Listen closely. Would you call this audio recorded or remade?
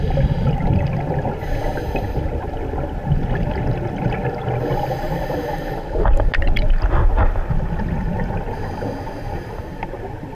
recorded